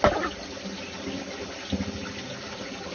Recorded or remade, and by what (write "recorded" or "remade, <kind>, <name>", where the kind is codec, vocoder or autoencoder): recorded